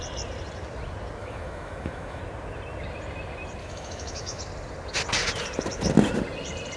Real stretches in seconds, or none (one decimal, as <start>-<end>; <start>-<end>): 0.0-1.2; 2.2-3.6; 4.4-6.8